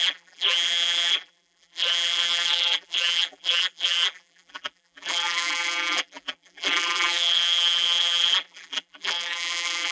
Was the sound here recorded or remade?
remade